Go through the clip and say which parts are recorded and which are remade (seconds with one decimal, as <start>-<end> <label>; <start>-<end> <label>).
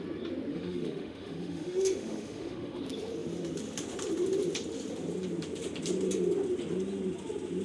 0.0-0.5 recorded; 0.5-2.8 remade; 2.8-7.6 recorded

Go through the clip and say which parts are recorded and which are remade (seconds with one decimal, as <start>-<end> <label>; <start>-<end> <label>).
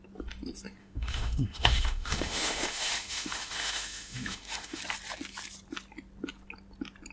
0.0-0.8 recorded; 0.8-4.8 remade; 4.8-7.1 recorded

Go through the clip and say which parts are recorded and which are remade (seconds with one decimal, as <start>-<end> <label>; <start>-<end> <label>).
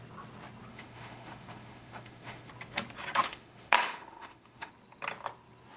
0.0-0.7 recorded; 0.7-2.5 remade; 2.5-3.2 recorded; 3.2-4.7 remade; 4.7-5.8 recorded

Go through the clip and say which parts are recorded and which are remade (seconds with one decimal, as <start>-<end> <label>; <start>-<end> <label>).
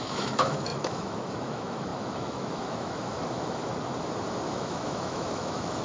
0.0-3.7 remade; 3.7-4.5 recorded; 4.5-5.8 remade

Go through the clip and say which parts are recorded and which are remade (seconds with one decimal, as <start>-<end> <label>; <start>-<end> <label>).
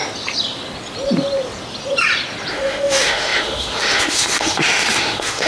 0.0-2.5 recorded; 2.5-5.5 remade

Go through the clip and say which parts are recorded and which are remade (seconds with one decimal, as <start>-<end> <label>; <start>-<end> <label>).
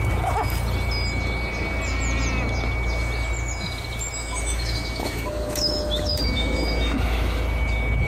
0.0-4.2 recorded; 4.2-7.4 remade; 7.4-8.1 recorded